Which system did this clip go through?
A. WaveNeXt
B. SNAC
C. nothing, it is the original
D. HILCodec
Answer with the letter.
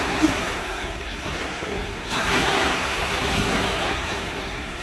B